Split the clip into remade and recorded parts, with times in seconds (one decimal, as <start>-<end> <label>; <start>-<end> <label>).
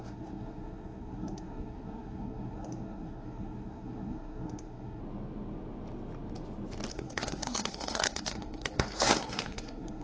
0.0-5.0 remade; 5.0-6.9 recorded; 6.9-10.0 remade